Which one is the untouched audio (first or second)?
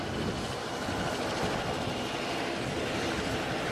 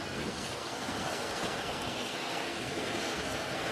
first